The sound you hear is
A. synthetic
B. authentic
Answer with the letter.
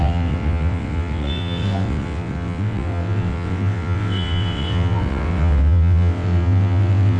A